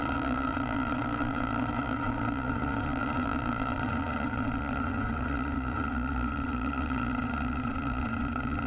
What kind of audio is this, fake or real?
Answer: fake